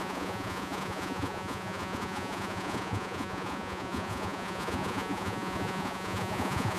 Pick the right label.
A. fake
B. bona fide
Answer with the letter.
A